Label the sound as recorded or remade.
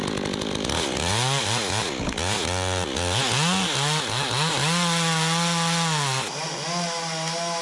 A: recorded